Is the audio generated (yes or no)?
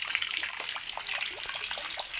no